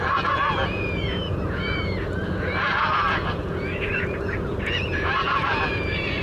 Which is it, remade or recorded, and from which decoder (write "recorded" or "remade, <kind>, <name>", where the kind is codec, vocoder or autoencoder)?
remade, vocoder, Vocos